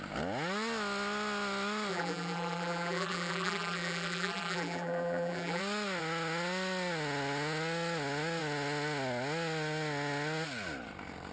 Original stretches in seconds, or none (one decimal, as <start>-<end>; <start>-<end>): 0.0-1.9; 5.6-11.3